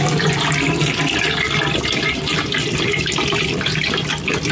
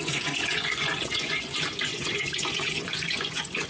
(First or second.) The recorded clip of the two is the first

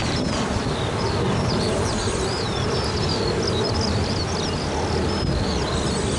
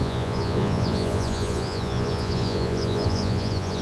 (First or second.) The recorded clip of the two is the first